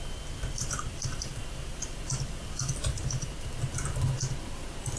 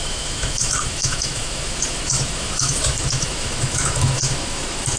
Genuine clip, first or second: first